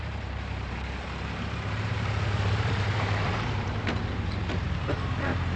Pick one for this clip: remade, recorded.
remade